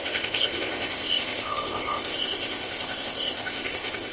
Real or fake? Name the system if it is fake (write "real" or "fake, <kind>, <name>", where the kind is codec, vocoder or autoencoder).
fake, codec, ZipCodec